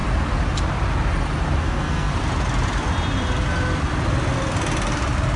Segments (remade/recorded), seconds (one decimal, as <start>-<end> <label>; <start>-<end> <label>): 0.0-1.6 recorded; 1.6-2.1 remade; 2.1-5.4 recorded